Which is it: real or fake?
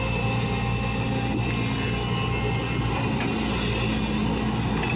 real